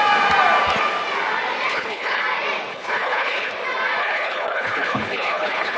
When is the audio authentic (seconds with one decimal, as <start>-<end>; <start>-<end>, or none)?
0.0-1.7; 2.2-2.7; 3.5-4.0